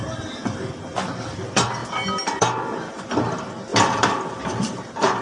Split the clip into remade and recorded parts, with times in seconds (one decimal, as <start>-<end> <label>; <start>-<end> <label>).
0.0-1.8 recorded; 1.8-3.3 remade; 3.3-3.7 recorded; 3.7-5.2 remade